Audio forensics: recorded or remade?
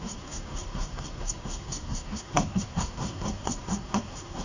remade